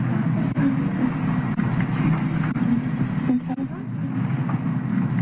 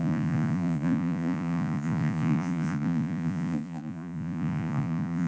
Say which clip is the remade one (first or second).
second